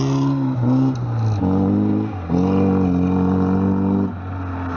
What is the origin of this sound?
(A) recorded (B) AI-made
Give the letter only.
A